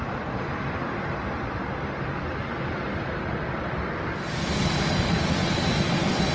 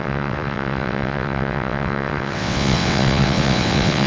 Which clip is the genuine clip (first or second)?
first